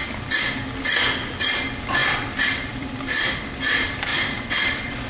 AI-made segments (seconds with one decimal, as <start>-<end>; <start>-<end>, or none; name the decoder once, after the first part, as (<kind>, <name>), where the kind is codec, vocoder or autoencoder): 2.0-3.0 (vocoder, BigVGAN v2); 4.1-5.1